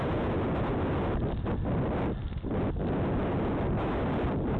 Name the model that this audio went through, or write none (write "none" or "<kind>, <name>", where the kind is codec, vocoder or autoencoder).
none